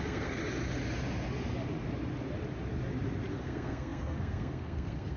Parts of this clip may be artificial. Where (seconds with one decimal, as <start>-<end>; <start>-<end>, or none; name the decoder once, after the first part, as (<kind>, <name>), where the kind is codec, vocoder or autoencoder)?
0.0-0.4 (codec, SNAC); 3.3-5.2